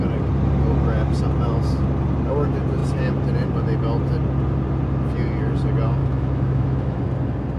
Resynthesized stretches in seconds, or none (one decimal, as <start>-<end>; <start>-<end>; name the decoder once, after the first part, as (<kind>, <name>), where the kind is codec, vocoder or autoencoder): 6.0-7.0 (autoencoder, DAC-VAE)